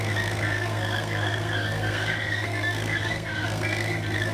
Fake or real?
fake